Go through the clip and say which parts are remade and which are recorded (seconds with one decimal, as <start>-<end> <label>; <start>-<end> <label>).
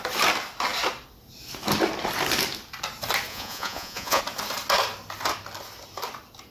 0.0-3.3 recorded; 3.3-4.2 remade; 4.2-6.5 recorded